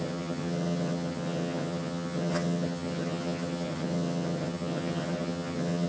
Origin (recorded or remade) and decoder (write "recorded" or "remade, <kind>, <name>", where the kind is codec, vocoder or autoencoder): remade, vocoder, HiFi-GAN